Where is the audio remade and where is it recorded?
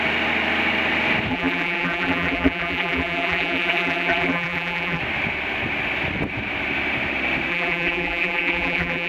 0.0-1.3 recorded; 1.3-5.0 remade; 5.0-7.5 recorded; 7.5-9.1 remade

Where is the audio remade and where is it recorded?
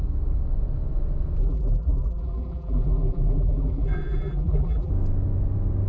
0.0-1.4 recorded; 1.4-4.9 remade; 4.9-5.9 recorded